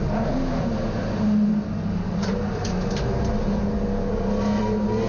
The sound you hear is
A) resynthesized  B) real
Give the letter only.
B